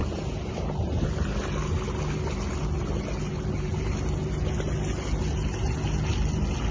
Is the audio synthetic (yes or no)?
no